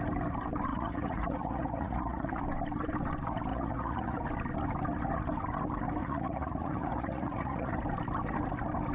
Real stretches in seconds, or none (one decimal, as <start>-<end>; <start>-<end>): 0.0-0.7; 2.4-3.5; 4.2-6.0; 7.7-8.9